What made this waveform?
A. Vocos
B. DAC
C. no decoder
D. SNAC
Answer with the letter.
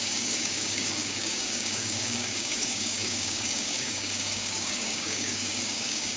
B